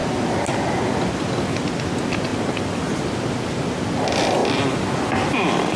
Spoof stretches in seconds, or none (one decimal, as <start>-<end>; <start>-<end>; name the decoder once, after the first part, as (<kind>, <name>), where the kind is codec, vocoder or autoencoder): 2.3-3.1 (vocoder, BigVGAN v2); 4.4-5.8